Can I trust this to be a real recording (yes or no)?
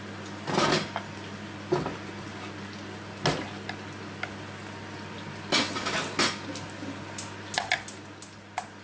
yes